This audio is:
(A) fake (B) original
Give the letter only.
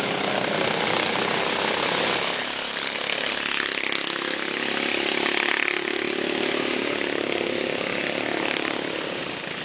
B